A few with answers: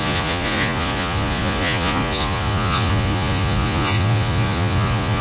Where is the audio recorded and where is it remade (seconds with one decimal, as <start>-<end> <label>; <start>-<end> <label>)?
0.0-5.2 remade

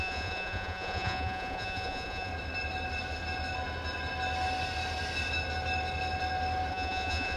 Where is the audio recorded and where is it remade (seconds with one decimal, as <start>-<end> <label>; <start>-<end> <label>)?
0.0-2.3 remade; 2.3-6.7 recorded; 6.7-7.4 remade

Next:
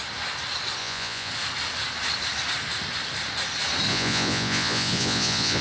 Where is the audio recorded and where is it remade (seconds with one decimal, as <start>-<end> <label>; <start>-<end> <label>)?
0.0-0.8 recorded; 0.8-1.3 remade; 1.3-3.9 recorded; 3.9-5.6 remade

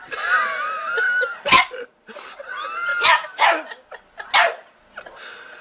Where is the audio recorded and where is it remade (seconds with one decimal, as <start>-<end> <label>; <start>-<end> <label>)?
0.0-5.6 recorded

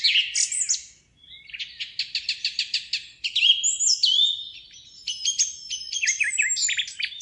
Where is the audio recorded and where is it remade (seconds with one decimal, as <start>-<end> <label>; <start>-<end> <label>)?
0.0-7.2 recorded

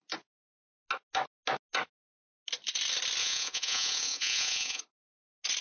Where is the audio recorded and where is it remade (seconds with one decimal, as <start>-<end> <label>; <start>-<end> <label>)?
0.0-3.2 recorded; 3.2-4.8 remade; 4.8-5.6 recorded

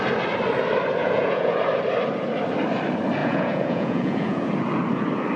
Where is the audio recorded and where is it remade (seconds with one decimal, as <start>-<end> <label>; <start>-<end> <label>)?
0.0-1.0 recorded; 1.0-1.6 remade; 1.6-3.2 recorded; 3.2-4.5 remade; 4.5-5.4 recorded

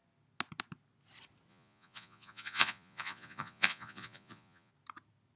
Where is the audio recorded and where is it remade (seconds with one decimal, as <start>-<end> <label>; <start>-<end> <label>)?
0.0-1.5 recorded; 1.5-4.7 remade; 4.7-5.4 recorded